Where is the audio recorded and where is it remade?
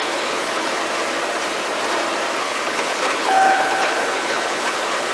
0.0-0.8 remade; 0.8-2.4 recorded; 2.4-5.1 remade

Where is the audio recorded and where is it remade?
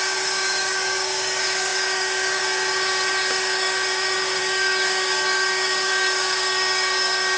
0.0-7.4 remade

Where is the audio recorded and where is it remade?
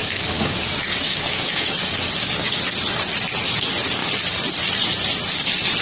0.0-2.6 remade; 2.6-5.8 recorded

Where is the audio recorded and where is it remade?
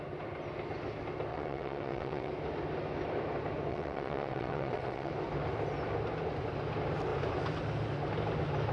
0.0-1.3 recorded; 1.3-2.3 remade; 2.3-3.7 recorded; 3.7-5.1 remade; 5.1-8.7 recorded